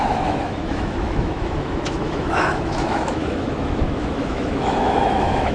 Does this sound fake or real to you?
fake